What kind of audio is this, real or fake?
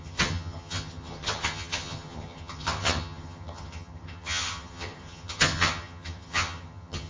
fake